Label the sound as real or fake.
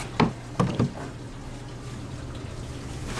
real